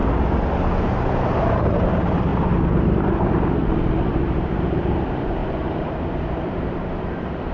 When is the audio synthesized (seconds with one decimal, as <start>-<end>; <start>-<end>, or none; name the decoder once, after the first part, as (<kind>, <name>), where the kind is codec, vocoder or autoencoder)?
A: 1.4-2.3 (vocoder, BigVGAN v2); 3.0-7.5